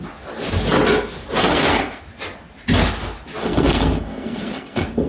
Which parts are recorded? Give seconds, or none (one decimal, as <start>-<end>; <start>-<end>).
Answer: 0.0-1.4; 2.0-3.4